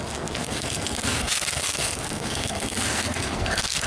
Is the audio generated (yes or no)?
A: yes